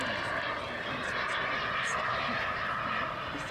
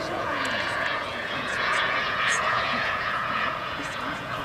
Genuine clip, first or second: first